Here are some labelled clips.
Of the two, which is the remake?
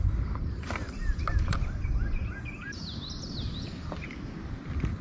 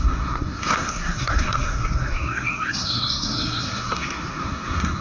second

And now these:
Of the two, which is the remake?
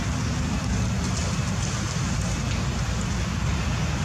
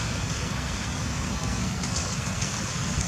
second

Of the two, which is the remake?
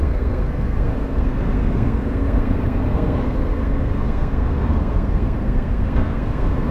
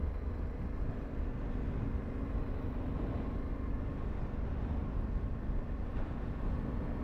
first